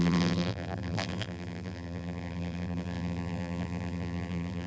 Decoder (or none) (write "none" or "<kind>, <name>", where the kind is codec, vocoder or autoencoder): vocoder, BigVGAN v2